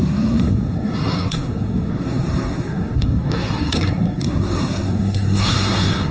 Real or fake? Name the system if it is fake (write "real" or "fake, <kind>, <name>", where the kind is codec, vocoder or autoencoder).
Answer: fake, codec, SNAC